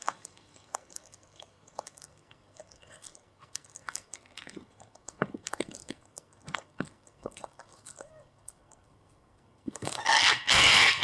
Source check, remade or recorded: remade